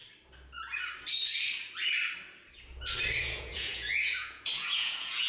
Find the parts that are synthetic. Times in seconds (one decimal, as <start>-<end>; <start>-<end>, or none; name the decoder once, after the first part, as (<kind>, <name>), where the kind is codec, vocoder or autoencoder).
3.2-5.3 (vocoder, Vocos)